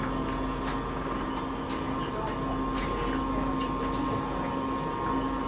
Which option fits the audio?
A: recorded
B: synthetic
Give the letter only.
A